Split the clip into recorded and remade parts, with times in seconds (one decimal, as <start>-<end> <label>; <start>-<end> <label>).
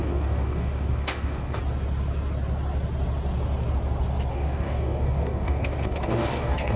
0.0-1.6 remade; 1.6-4.3 recorded; 4.3-6.8 remade